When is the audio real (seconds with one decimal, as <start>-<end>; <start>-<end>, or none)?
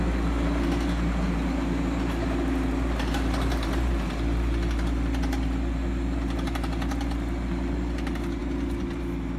0.0-9.4